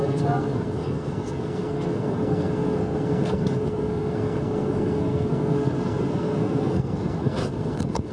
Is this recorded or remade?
remade